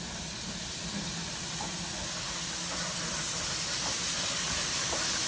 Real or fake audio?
real